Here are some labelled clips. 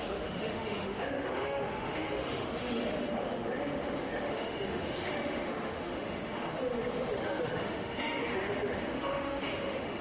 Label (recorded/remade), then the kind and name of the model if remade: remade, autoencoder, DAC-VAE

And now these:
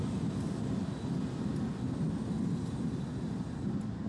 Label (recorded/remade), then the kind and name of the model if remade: recorded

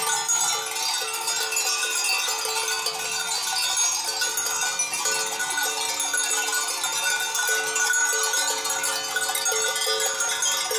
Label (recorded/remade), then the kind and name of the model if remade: recorded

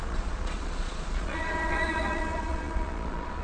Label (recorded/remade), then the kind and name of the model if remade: remade, vocoder, Vocos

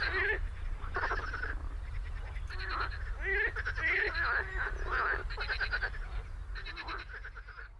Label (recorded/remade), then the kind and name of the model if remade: recorded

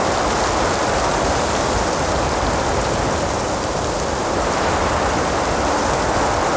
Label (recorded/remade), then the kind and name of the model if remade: recorded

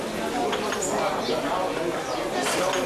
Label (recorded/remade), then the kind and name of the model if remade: recorded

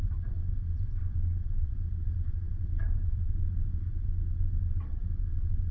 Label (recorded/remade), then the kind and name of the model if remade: remade, vocoder, Vocos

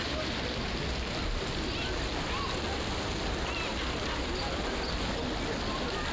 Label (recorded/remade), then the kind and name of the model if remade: recorded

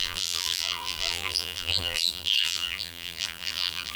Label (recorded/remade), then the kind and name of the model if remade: remade, vocoder, BigVGAN v2